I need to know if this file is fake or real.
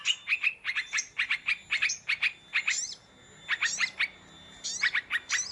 real